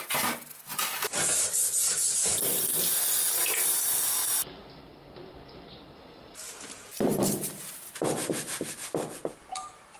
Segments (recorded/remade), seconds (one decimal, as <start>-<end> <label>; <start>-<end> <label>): 0.0-2.2 recorded; 2.2-2.9 remade; 2.9-4.2 recorded; 4.2-5.5 remade; 5.5-10.0 recorded